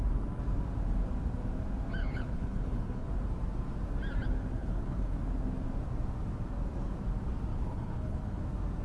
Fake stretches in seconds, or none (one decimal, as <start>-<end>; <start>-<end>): 2.0-3.1; 4.6-5.2; 7.5-8.4